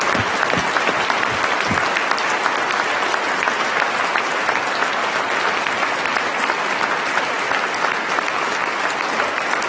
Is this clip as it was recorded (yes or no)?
yes